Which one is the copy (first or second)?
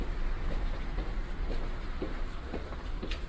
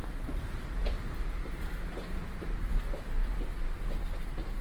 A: first